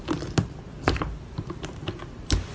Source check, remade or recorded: recorded